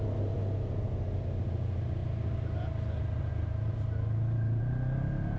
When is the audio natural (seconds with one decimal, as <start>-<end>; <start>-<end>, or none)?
0.0-5.4